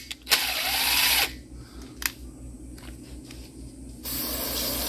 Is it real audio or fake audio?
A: real